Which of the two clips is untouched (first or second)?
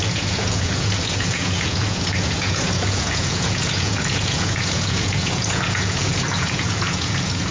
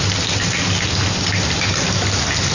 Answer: second